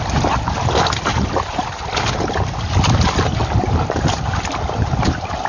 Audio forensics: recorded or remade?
recorded